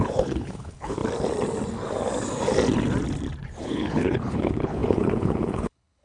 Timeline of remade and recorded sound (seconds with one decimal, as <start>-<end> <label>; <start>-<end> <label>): 0.0-1.0 remade; 1.0-3.6 recorded; 3.6-6.0 remade

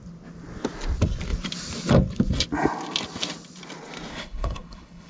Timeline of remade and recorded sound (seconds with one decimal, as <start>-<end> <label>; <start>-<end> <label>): 0.0-4.1 recorded; 4.1-5.1 remade

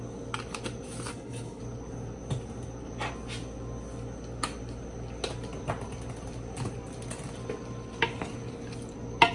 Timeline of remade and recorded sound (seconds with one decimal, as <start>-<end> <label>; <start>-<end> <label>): 0.0-1.1 recorded; 1.1-1.6 remade; 1.6-9.3 recorded

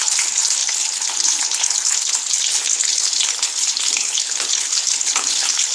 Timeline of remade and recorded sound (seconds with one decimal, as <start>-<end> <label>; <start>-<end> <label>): 0.0-5.7 remade

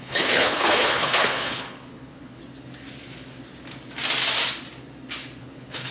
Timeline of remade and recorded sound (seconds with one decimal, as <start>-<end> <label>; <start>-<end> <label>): 0.0-2.4 remade; 2.4-5.4 recorded; 5.4-5.9 remade